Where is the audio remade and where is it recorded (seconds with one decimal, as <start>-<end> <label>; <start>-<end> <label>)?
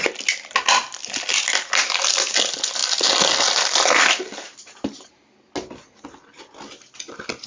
0.0-7.5 recorded